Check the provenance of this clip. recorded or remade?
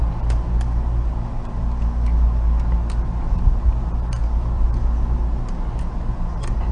recorded